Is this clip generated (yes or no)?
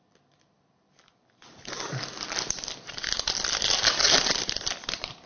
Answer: yes